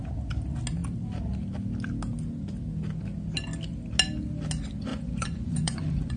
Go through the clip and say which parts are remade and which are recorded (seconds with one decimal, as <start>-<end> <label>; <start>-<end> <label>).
0.0-4.9 recorded; 4.9-6.2 remade